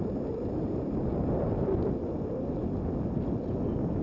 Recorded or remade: recorded